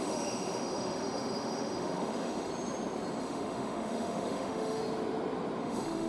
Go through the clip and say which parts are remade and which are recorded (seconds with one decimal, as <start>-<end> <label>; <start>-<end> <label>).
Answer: 0.0-2.5 remade; 2.5-3.2 recorded; 3.2-4.8 remade; 4.8-5.6 recorded; 5.6-6.1 remade